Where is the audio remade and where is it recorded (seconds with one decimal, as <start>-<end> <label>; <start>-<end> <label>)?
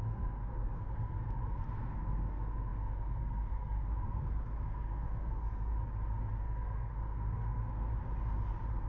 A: 0.0-5.7 remade; 5.7-6.4 recorded; 6.4-7.9 remade; 7.9-8.9 recorded